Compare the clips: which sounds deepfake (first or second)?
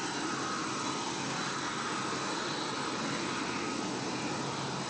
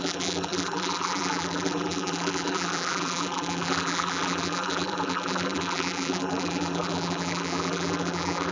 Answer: second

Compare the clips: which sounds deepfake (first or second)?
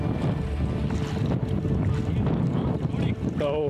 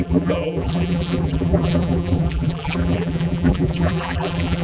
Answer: second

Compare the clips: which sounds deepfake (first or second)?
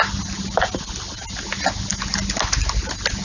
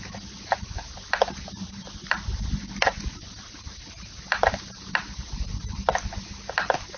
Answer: second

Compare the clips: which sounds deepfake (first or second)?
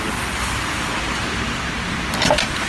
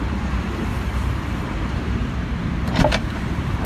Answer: second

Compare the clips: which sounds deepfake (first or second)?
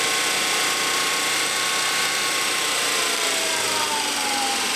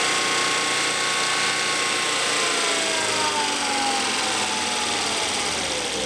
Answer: first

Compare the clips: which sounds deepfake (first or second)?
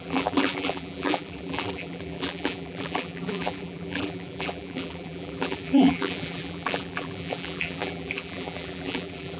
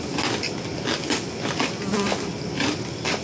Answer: first